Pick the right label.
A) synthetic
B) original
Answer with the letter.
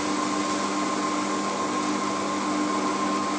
B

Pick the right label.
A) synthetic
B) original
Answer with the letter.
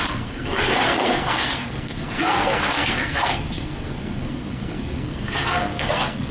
A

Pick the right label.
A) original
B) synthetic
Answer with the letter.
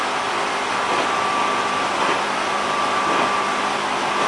A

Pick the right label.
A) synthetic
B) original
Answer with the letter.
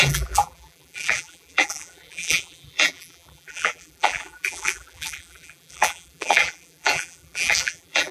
A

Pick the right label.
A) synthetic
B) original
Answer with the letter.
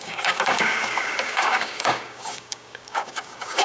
A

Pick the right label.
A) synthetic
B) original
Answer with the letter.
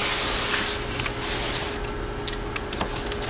B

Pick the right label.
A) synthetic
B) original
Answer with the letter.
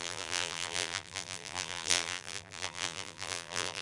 A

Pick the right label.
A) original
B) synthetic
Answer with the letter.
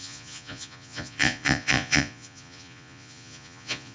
B